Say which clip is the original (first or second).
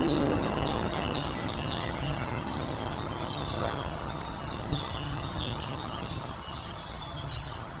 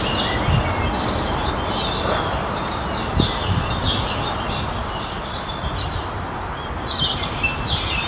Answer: second